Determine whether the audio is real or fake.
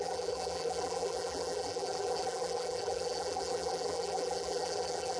fake